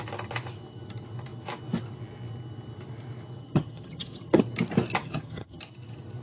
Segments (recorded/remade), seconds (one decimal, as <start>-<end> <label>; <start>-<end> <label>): 0.0-3.4 recorded; 3.4-4.4 remade; 4.4-5.0 recorded; 5.0-5.6 remade; 5.6-6.2 recorded